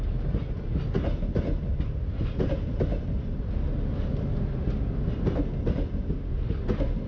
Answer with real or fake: real